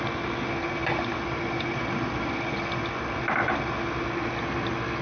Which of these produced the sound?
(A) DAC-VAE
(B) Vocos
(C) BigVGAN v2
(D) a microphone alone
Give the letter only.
D